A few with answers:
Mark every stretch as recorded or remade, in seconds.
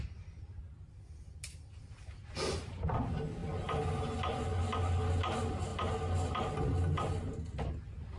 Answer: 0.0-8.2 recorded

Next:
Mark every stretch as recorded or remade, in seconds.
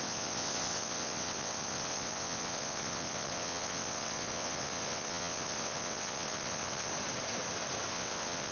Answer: 0.0-6.9 remade; 6.9-7.9 recorded; 7.9-8.5 remade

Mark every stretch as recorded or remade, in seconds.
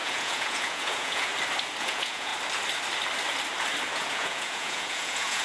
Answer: 0.0-1.3 remade; 1.3-1.8 recorded; 1.8-2.3 remade; 2.3-3.9 recorded; 3.9-5.4 remade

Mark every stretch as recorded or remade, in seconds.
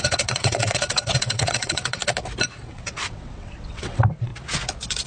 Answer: 0.0-2.0 remade; 2.0-2.7 recorded; 2.7-4.3 remade; 4.3-5.1 recorded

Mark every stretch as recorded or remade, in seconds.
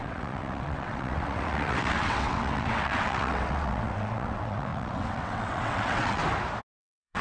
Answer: 0.0-6.2 remade; 6.2-6.8 recorded; 6.8-7.2 remade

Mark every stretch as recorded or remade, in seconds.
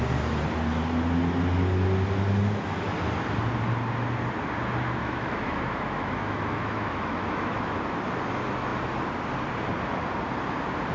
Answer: 0.0-5.0 recorded; 5.0-7.7 remade; 7.7-10.9 recorded